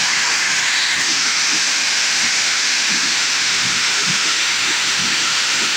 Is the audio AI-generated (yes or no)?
yes